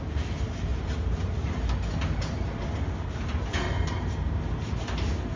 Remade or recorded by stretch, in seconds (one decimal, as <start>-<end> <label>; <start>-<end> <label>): 0.0-5.4 recorded